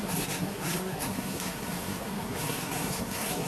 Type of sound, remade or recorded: remade